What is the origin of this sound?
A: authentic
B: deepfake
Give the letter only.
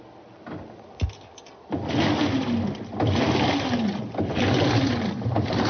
A